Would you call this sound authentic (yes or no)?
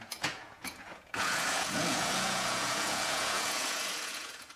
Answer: no